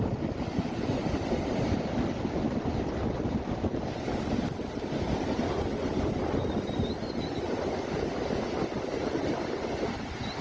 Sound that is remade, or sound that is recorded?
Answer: recorded